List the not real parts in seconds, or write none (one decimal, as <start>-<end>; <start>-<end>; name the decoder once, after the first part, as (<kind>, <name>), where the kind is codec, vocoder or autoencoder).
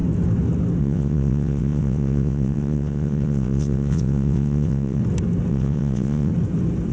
0.8-5.0 (vocoder, WaveNeXt); 5.5-6.3